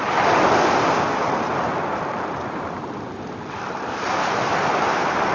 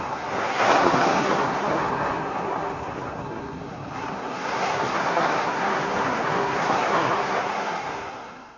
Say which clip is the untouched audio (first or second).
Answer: first